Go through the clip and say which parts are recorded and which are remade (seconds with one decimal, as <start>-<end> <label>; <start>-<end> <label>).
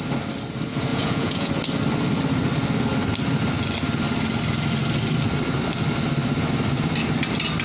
0.0-0.9 recorded; 0.9-1.5 remade; 1.5-7.6 recorded